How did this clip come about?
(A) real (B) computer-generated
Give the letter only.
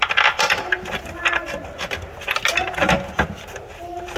A